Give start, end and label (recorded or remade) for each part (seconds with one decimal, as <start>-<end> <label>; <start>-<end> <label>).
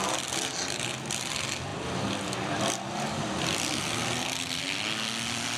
0.0-5.6 recorded